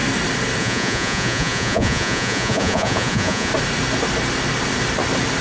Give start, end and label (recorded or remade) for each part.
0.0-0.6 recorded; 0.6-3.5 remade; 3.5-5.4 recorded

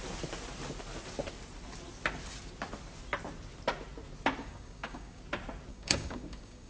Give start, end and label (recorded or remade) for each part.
0.0-4.4 recorded; 4.4-5.2 remade; 5.2-5.7 recorded; 5.7-6.7 remade

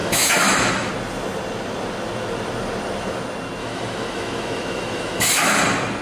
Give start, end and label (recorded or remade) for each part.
0.0-0.9 remade; 0.9-3.6 recorded; 3.6-5.6 remade; 5.6-6.0 recorded

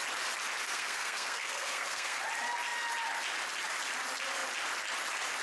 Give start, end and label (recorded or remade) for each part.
0.0-0.6 recorded; 0.6-2.2 remade; 2.2-5.4 recorded

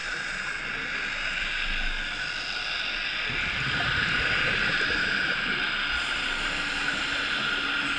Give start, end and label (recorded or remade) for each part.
0.0-0.5 remade; 0.5-3.8 recorded; 3.8-5.5 remade; 5.5-6.1 recorded; 6.1-6.7 remade; 6.7-8.0 recorded

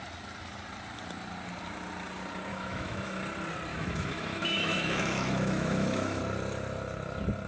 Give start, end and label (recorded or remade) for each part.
0.0-2.5 recorded; 2.5-3.2 remade; 3.2-3.7 recorded; 3.7-6.2 remade; 6.2-7.5 recorded